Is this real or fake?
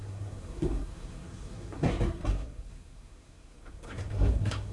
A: fake